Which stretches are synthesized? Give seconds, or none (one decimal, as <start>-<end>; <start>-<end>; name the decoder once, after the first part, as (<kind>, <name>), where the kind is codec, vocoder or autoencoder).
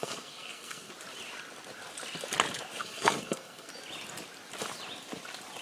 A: 0.0-0.9 (codec, SNAC); 2.8-3.7